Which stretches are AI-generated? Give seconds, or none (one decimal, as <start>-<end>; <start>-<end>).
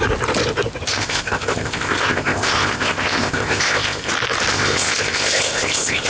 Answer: 0.9-4.1; 4.5-6.1